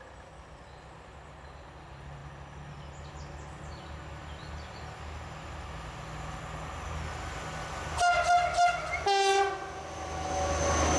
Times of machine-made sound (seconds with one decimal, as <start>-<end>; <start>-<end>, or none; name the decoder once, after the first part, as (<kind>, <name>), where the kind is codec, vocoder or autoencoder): none